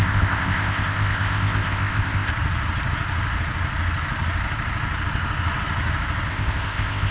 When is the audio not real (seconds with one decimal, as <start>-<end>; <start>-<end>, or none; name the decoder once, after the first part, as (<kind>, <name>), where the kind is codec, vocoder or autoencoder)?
0.0-2.3 (codec, ZipCodec); 6.3-7.1